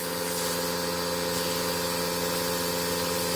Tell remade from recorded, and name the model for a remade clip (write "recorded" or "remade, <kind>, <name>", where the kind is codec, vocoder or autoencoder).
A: recorded